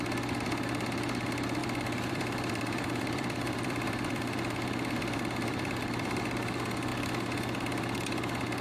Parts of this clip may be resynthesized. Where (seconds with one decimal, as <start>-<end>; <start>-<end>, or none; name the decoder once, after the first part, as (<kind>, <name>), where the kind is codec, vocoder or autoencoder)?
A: 1.6-6.2 (vocoder, BigVGAN v2)